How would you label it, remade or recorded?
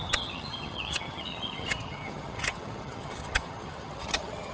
remade